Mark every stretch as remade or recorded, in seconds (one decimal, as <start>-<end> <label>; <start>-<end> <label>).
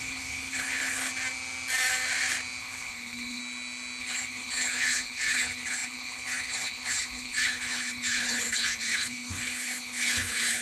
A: 0.0-1.1 remade; 1.1-2.6 recorded; 2.6-3.4 remade; 3.4-4.0 recorded; 4.0-10.6 remade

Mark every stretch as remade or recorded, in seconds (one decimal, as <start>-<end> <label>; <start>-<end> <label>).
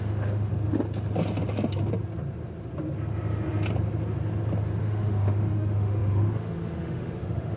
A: 0.0-0.5 remade; 0.5-4.8 recorded; 4.8-7.6 remade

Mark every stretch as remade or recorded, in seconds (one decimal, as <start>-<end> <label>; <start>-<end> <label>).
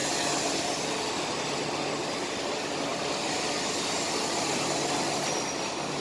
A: 0.0-6.0 recorded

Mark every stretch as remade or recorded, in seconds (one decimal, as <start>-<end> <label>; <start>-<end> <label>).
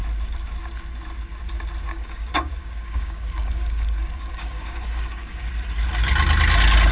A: 0.0-1.9 recorded; 1.9-5.5 remade; 5.5-6.9 recorded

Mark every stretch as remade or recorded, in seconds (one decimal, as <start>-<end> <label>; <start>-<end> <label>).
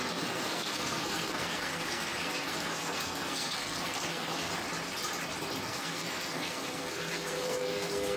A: 0.0-4.5 remade; 4.5-5.6 recorded; 5.6-8.2 remade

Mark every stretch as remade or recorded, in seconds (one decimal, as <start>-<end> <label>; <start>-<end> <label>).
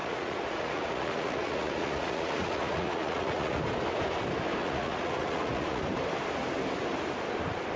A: 0.0-3.6 remade; 3.6-4.6 recorded; 4.6-5.8 remade; 5.8-7.8 recorded